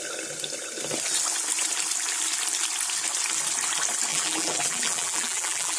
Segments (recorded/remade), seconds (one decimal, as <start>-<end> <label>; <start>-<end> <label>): 0.0-4.1 recorded; 4.1-5.8 remade